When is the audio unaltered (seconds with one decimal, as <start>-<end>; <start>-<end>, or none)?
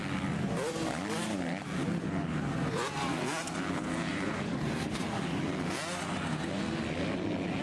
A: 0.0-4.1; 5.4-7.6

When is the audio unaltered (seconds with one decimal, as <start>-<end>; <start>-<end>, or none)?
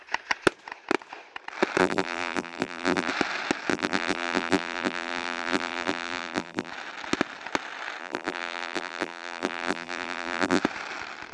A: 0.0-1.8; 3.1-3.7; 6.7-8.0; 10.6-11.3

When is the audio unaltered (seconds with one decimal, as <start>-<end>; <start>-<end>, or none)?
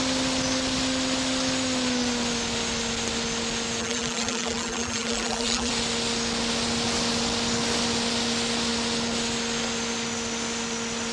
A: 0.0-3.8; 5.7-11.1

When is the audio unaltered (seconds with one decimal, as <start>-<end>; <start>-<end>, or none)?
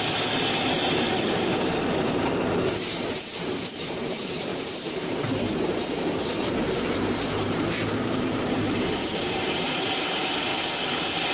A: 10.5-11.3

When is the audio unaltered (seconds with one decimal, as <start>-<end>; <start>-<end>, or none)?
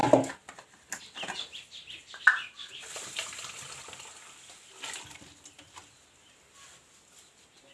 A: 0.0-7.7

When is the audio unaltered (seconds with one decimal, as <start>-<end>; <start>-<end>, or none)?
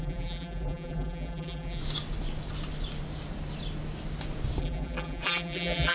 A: 1.8-4.6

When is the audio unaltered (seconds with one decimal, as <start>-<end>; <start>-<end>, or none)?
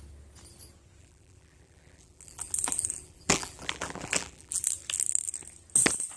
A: 0.0-1.0; 4.7-6.2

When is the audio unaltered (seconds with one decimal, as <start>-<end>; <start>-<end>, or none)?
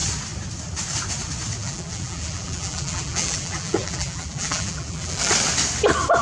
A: 0.0-1.6; 5.3-6.2